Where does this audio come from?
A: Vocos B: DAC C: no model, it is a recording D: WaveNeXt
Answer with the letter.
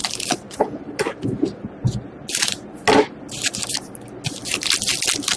C